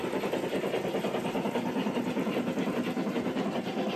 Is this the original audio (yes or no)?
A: yes